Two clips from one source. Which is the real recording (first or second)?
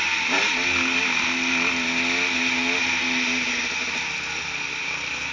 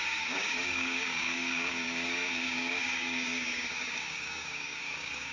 first